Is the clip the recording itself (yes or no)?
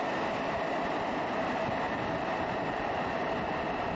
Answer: yes